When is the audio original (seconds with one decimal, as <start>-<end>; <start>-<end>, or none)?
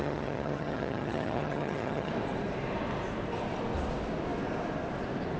2.1-5.4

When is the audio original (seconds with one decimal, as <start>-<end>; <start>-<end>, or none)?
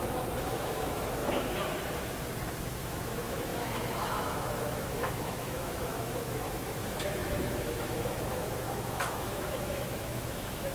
1.2-2.6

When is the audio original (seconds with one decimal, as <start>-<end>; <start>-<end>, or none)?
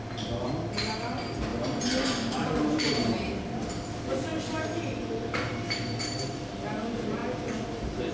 0.0-8.1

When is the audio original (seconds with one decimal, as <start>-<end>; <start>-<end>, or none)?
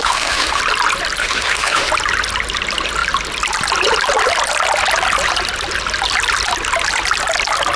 0.6-1.2; 1.9-7.8